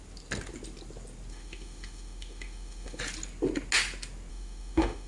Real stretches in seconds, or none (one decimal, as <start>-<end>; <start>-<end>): 0.0-1.3; 3.0-4.3